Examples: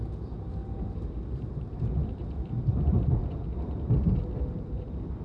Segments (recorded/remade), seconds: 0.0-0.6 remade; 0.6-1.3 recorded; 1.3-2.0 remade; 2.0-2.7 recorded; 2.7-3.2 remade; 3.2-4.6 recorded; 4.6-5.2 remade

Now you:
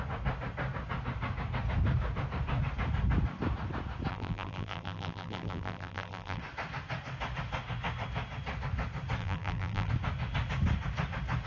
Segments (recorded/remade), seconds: 0.0-4.1 recorded; 4.1-6.4 remade; 6.4-9.2 recorded; 9.2-9.9 remade; 9.9-11.5 recorded

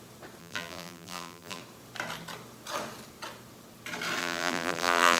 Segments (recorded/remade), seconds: 0.0-0.4 recorded; 0.4-1.6 remade; 1.6-4.2 recorded; 4.2-5.2 remade

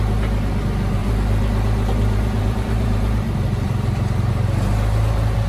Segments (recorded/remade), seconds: 0.0-1.0 recorded; 1.0-4.3 remade; 4.3-5.5 recorded

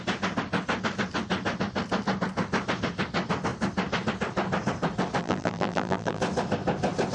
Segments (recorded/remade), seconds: 0.0-5.2 recorded; 5.2-6.2 remade; 6.2-7.1 recorded

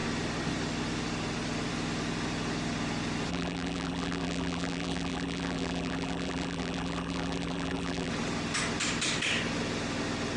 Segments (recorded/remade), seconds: 0.0-3.3 recorded; 3.3-8.1 remade; 8.1-10.4 recorded